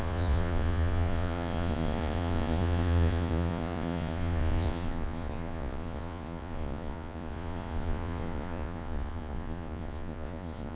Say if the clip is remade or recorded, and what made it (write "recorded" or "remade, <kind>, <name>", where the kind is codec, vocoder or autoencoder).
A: remade, vocoder, Vocos